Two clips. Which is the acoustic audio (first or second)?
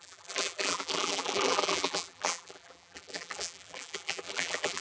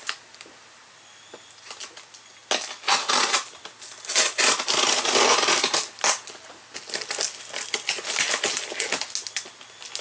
second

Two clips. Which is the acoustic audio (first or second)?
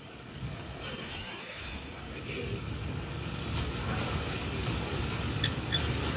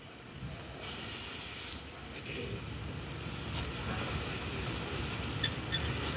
second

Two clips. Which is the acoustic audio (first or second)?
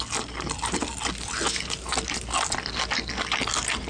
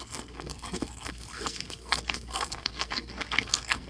first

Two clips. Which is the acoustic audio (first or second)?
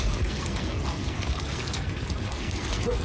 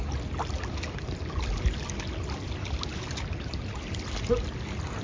second